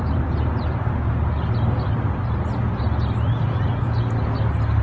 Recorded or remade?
recorded